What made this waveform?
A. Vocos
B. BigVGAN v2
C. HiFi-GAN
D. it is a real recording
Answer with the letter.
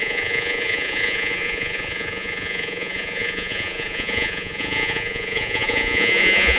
A